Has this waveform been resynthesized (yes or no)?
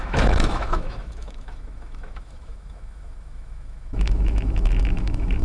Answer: yes